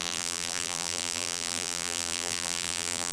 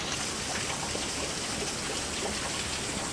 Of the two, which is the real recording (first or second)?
second